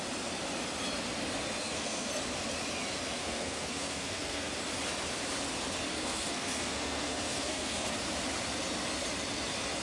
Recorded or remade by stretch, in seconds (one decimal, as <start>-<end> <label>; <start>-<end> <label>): 0.0-1.6 recorded; 1.6-2.2 remade; 2.2-3.2 recorded; 3.2-4.5 remade; 4.5-5.9 recorded; 5.9-7.9 remade; 7.9-9.8 recorded